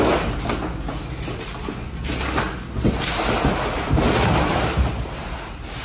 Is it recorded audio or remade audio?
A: recorded